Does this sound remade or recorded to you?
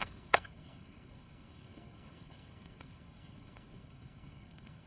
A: remade